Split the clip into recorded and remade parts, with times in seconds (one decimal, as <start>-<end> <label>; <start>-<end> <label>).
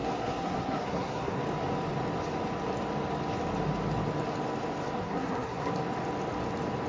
0.0-1.4 remade; 1.4-5.0 recorded; 5.0-5.7 remade; 5.7-6.9 recorded